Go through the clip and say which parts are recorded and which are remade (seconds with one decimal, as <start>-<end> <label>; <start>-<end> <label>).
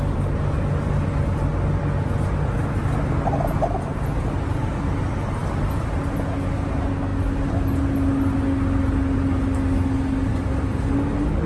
0.0-11.5 recorded